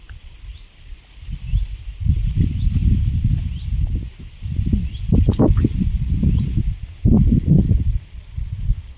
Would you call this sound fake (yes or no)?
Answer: no